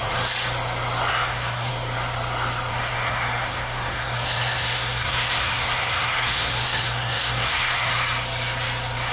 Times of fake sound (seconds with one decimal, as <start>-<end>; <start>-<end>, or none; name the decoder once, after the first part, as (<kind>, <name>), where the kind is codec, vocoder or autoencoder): 1.1-1.7 (codec, SNAC); 2.7-7.9